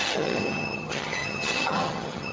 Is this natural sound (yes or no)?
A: no